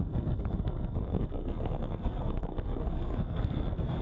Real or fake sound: fake